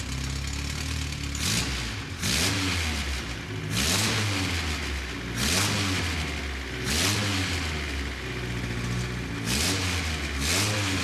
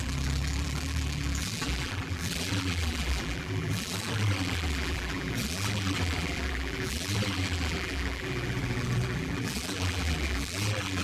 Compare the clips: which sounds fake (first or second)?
second